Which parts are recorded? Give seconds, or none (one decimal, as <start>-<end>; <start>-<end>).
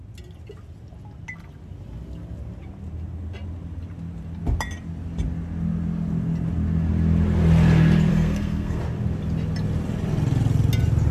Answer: 0.0-8.1; 8.8-11.1